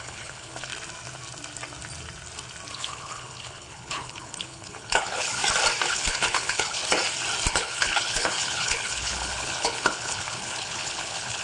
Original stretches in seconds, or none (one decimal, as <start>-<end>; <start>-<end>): 0.7-2.7; 5.4-5.9; 6.8-7.5